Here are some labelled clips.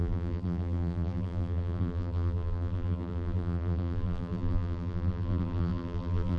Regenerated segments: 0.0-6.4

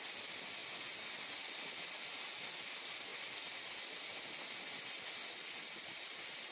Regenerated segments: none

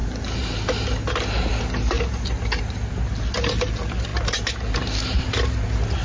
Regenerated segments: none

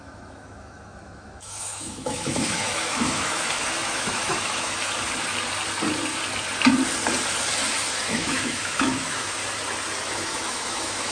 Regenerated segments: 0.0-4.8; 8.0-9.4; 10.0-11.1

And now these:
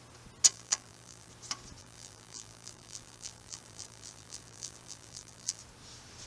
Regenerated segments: 0.5-1.3; 1.8-5.6